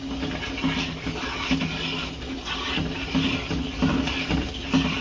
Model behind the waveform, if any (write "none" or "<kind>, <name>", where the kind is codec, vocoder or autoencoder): none